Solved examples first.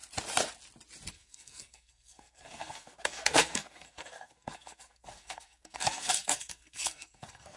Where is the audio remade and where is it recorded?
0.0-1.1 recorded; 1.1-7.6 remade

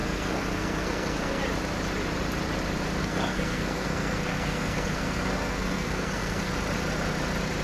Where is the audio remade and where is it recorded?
0.0-1.4 remade; 1.4-3.0 recorded; 3.0-6.5 remade; 6.5-7.6 recorded

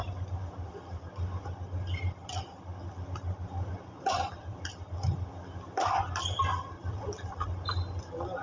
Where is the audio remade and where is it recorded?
0.0-8.4 recorded

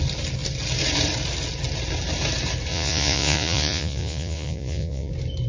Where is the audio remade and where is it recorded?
0.0-2.7 recorded; 2.7-5.1 remade; 5.1-5.5 recorded